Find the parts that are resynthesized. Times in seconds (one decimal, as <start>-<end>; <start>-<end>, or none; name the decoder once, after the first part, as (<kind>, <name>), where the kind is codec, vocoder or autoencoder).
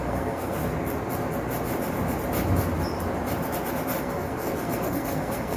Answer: 0.0-0.6 (codec, SNAC); 4.0-5.6